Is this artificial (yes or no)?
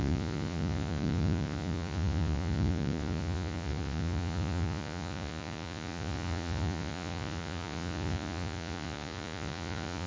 yes